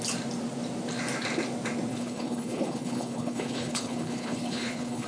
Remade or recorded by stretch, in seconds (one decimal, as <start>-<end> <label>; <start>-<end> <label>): 0.0-1.9 recorded; 1.9-5.1 remade